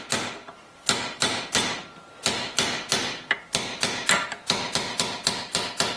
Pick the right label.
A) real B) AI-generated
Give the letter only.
A